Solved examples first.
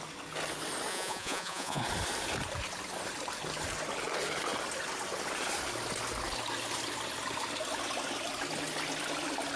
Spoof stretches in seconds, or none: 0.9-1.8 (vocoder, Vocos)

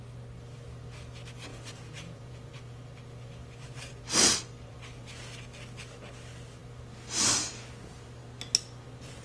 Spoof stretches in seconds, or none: 1.5-2.5 (vocoder, Vocos)

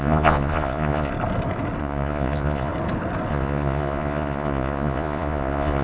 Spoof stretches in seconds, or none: 0.0-1.1 (vocoder, Vocos); 1.8-2.7; 3.3-5.8

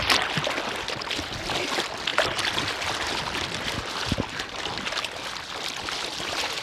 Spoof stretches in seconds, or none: none

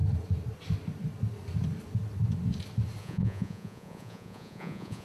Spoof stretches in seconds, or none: 3.0-5.0 (vocoder, Vocos)

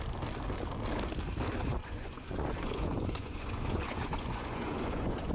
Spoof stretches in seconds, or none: 1.8-5.3 (vocoder, Vocos)

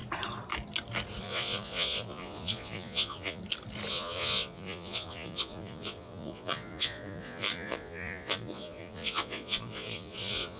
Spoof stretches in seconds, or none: 1.2-3.4 (vocoder, Vocos); 3.9-10.6